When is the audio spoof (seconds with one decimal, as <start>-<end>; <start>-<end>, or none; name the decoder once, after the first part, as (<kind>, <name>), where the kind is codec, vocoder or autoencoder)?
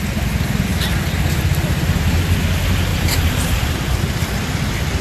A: 2.9-4.0 (vocoder, BigVGAN v2)